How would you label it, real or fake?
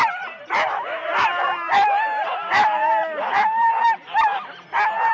fake